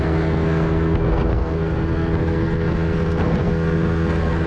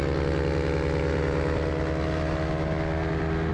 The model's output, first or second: first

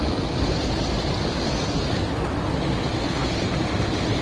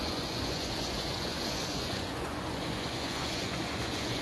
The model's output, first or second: second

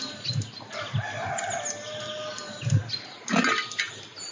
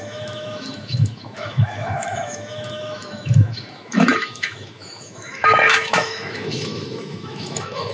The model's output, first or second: second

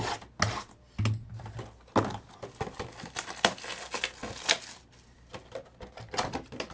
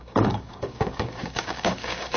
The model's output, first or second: second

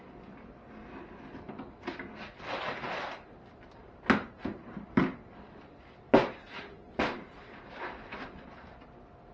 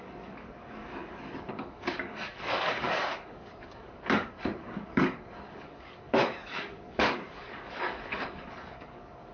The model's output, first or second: second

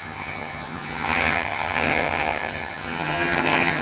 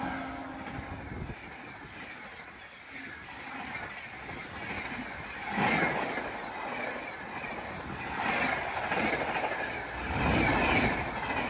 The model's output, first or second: first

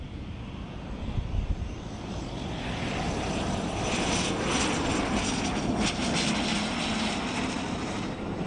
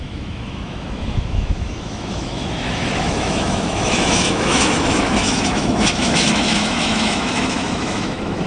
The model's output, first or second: second